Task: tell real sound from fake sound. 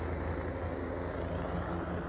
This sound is real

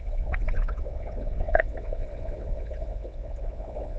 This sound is fake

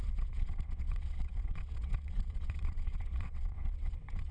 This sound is fake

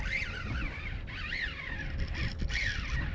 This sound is real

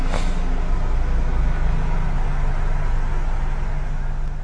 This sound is real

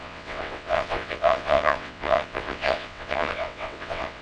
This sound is fake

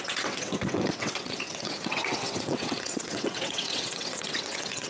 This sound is fake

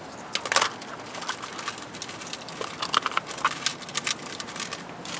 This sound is real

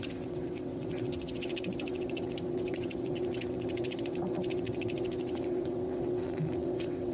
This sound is fake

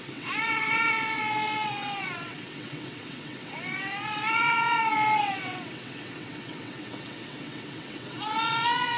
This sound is fake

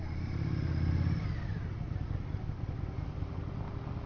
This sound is real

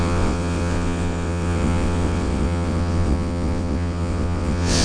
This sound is fake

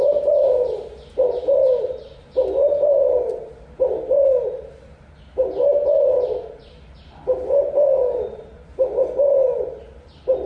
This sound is real